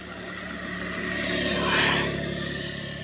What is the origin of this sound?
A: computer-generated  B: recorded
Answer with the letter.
B